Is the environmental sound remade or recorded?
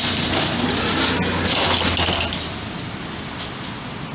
recorded